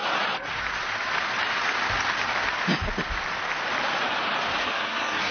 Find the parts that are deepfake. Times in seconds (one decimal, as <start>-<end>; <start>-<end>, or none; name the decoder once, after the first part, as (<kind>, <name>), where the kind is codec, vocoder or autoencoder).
4.6-5.3 (codec, SNAC)